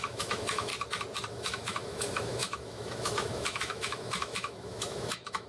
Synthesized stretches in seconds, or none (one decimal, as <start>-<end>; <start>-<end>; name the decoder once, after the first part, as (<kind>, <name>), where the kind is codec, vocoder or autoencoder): 0.0-0.7 (autoencoder, DAC-VAE); 1.3-5.5

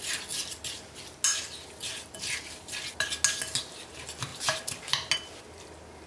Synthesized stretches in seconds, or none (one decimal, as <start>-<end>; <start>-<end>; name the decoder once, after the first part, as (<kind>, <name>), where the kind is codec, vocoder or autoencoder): 4.3-4.9 (vocoder, BigVGAN v2)

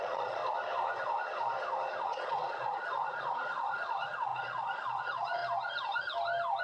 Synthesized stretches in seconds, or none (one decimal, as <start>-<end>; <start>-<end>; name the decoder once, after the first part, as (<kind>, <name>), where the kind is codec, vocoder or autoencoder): 0.0-0.4 (vocoder, Vocos); 2.0-5.4

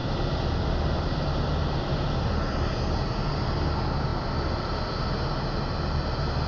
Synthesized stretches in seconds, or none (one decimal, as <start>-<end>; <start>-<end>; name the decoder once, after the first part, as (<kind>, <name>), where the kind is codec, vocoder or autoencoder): 0.0-2.7 (vocoder, BigVGAN v2)